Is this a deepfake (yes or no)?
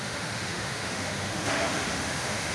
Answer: yes